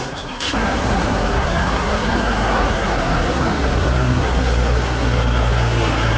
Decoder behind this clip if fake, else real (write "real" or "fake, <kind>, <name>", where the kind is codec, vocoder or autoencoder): fake, codec, SNAC